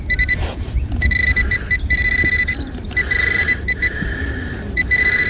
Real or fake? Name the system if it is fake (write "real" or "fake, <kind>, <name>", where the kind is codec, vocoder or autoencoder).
fake, vocoder, BigVGAN v2